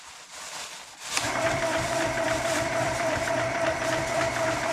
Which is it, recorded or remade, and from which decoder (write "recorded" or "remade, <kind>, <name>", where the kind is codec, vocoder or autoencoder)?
remade, vocoder, BigVGAN v2